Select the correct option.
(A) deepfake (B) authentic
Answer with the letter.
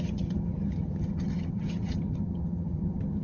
A